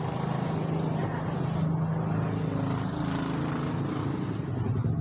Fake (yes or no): no